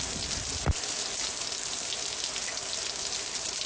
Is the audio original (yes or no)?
yes